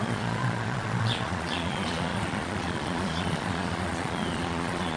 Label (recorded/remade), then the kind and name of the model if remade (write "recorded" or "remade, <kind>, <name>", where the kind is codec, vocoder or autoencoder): remade, vocoder, Vocos